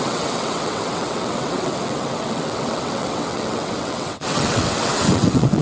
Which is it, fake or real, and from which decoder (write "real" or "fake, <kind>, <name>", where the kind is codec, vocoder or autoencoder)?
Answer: fake, vocoder, WaveNeXt